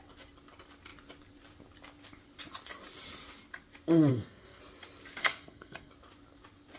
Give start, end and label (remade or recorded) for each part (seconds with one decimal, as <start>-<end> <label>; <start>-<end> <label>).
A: 0.0-4.1 recorded; 4.1-4.6 remade; 4.6-5.2 recorded; 5.2-5.9 remade; 5.9-6.8 recorded